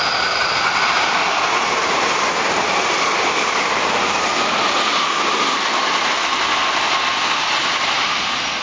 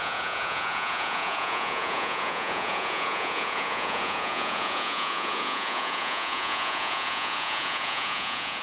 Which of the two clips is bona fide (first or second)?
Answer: first